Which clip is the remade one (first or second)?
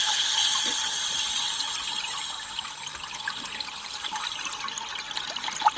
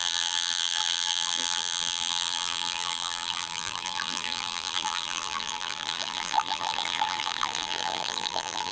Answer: second